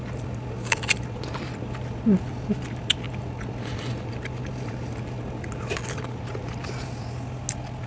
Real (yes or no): yes